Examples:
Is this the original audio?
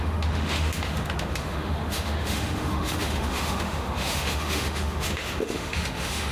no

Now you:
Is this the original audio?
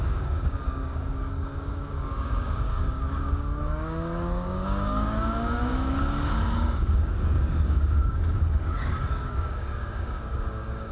no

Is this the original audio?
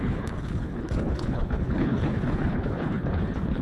no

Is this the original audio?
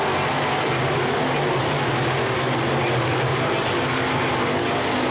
yes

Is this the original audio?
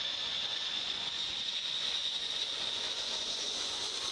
no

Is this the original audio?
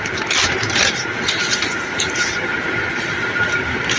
no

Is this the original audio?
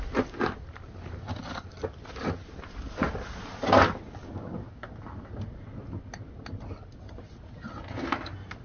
yes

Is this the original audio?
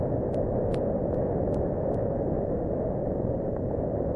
yes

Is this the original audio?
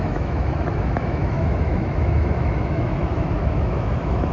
no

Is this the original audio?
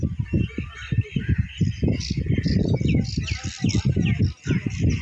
yes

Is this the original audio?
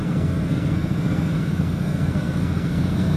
no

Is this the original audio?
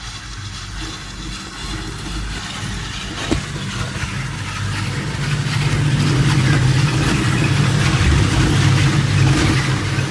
yes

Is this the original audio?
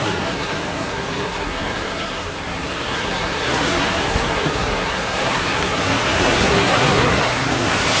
no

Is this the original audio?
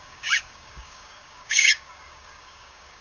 no